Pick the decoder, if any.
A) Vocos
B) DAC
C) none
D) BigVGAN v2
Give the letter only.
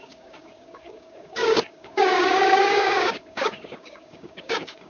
B